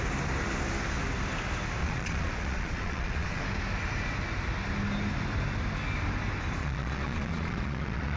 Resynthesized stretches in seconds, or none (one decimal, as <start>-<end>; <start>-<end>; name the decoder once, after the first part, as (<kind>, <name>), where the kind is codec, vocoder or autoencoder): 1.8-3.4 (vocoder, Vocos); 6.6-8.2